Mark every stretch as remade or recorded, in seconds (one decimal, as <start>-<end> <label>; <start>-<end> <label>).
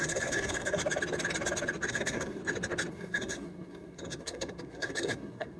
0.0-0.8 remade; 0.8-1.9 recorded; 1.9-2.4 remade; 2.4-2.9 recorded; 2.9-5.6 remade